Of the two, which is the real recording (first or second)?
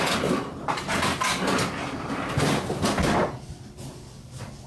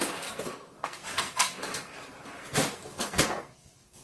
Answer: first